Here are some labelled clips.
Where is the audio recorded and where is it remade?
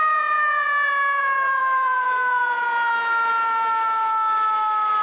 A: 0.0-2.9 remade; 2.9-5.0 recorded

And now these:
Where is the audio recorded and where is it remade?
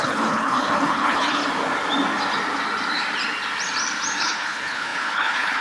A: 0.0-1.4 remade; 1.4-4.2 recorded; 4.2-5.6 remade